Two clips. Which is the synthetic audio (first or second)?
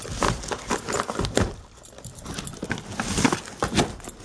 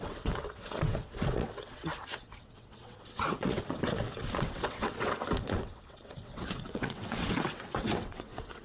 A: second